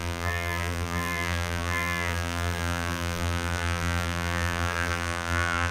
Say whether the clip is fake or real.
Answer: fake